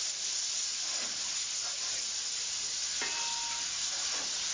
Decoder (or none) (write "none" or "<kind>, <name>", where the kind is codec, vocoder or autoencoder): none